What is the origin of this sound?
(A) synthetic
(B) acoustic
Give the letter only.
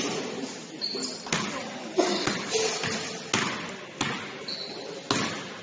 B